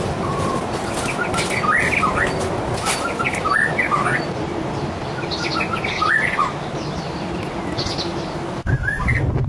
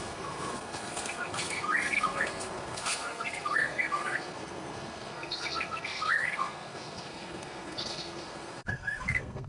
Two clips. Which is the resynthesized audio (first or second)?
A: second